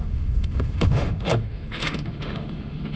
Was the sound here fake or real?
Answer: fake